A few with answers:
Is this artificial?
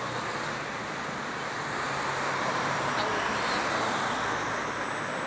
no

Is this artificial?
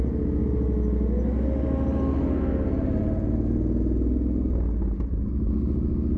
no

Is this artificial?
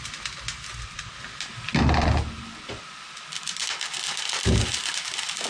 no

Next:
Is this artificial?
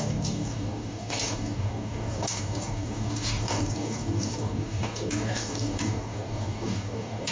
yes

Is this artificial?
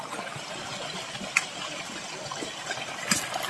no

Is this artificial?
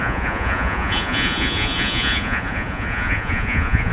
yes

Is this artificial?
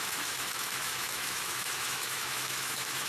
yes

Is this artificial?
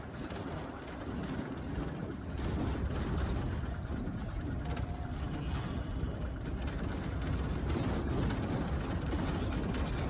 no